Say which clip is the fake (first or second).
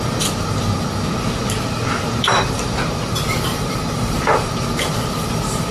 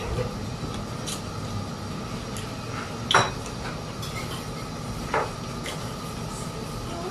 first